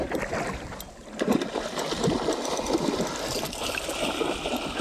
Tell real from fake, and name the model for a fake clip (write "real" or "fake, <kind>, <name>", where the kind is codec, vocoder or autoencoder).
real